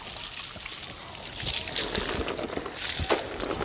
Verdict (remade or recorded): recorded